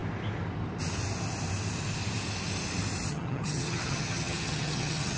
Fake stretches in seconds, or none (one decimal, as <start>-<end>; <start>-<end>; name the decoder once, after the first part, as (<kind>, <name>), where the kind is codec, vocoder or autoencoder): 3.1-5.2 (vocoder, HiFi-GAN)